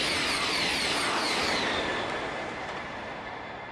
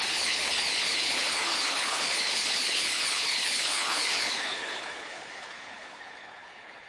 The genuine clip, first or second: first